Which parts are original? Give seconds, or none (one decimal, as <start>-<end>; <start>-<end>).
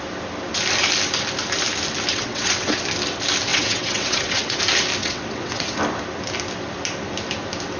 0.0-2.1; 2.8-3.5; 4.6-5.0; 5.8-7.8